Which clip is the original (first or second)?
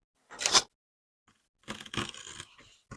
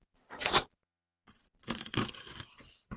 first